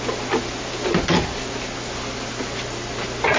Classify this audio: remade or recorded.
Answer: recorded